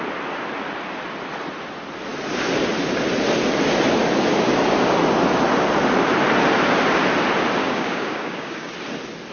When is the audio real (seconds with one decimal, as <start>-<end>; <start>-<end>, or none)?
0.0-7.6; 8.7-9.3

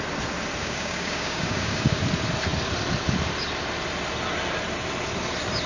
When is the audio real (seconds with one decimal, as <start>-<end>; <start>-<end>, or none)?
0.0-0.6; 2.0-5.7